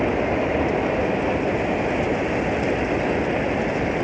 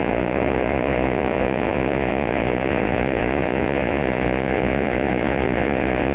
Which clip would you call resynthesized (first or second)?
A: second